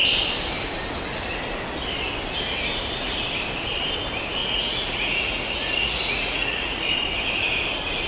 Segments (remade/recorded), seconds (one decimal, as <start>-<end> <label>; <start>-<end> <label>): 0.0-4.4 recorded; 4.4-6.9 remade; 6.9-8.1 recorded

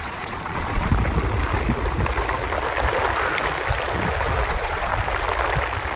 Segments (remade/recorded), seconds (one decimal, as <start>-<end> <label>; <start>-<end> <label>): 0.0-0.9 remade; 0.9-4.5 recorded; 4.5-4.9 remade; 4.9-6.0 recorded

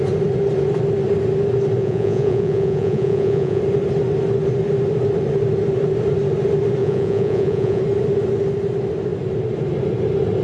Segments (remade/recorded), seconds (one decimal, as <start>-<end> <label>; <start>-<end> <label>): 0.0-1.8 recorded; 1.8-3.6 remade; 3.6-6.8 recorded; 6.8-7.8 remade; 7.8-10.4 recorded

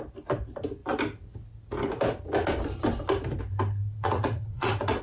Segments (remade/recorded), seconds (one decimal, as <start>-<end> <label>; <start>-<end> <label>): 0.0-4.0 recorded; 4.0-5.0 remade